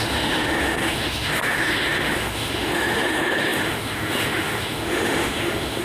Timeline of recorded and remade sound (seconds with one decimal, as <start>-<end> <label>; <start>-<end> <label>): 0.0-5.8 remade